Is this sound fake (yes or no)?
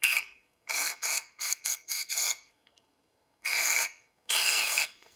yes